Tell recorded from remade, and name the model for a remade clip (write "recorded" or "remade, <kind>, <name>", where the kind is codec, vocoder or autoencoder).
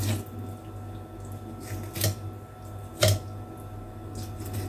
recorded